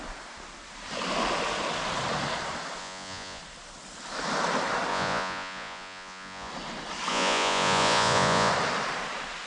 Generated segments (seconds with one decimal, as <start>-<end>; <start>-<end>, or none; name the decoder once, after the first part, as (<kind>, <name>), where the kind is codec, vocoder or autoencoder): 2.8-3.4 (vocoder, Vocos); 4.9-6.5; 7.1-8.5

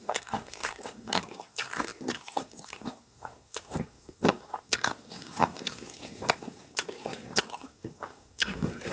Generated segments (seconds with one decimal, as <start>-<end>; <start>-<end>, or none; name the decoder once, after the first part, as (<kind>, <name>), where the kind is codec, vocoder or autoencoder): 0.0-8.9 (codec, SNAC)

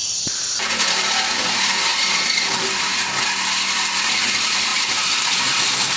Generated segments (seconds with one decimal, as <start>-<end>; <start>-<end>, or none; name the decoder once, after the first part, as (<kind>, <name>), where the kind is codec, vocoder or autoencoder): 0.0-1.3 (vocoder, BigVGAN v2); 1.9-2.9; 4.7-5.6

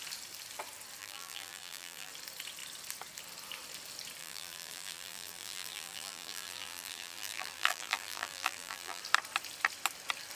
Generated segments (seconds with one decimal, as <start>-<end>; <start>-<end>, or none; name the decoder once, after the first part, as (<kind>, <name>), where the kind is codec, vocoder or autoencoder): 1.0-2.1 (vocoder, BigVGAN v2); 4.2-9.0

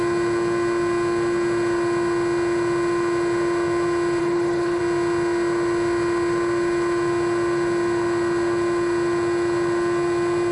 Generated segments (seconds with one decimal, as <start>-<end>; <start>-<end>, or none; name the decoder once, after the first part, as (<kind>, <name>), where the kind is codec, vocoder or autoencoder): 4.2-4.8 (codec, HILCodec)

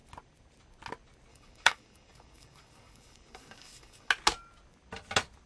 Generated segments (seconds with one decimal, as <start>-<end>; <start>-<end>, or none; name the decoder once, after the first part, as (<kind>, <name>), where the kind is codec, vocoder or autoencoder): 1.3-4.1 (codec, DAC)

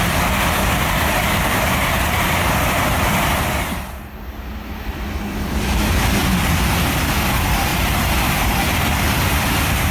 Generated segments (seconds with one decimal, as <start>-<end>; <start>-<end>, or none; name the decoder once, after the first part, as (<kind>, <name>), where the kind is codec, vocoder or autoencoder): 7.7-9.9 (vocoder, BigVGAN v2)

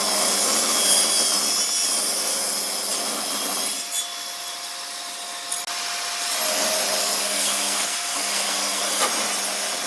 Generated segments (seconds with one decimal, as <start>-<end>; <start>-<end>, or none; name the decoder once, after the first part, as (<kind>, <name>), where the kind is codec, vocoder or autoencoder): 7.0-9.1 (codec, SNAC)